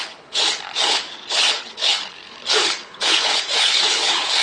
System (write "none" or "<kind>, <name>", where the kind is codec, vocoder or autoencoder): codec, HILCodec